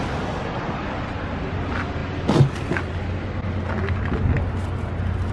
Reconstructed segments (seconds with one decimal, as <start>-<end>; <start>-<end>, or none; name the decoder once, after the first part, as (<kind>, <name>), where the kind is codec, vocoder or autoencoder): none